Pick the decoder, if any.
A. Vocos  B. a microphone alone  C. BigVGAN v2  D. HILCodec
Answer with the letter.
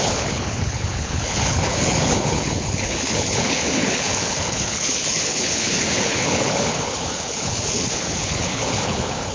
D